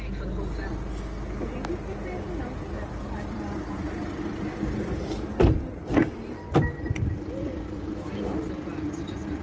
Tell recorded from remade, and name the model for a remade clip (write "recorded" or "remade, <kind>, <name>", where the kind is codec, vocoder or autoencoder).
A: recorded